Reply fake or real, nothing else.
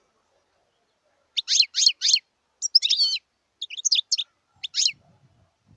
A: real